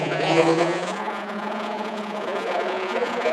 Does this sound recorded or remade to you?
remade